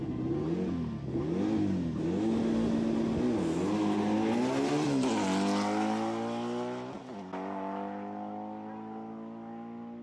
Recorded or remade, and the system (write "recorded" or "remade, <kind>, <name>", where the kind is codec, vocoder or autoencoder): recorded